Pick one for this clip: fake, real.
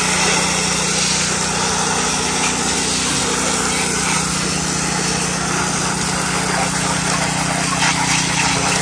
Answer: real